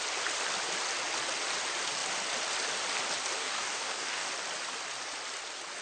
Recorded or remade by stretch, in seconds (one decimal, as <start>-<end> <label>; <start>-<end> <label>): 0.0-3.4 recorded; 3.4-4.3 remade; 4.3-5.8 recorded